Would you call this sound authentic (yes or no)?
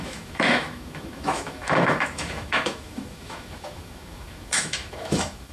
no